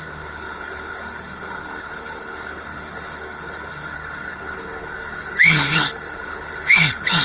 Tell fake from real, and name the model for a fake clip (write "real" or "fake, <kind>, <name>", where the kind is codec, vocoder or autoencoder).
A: fake, codec, HILCodec